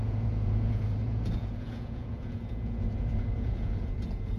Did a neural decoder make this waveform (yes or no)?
yes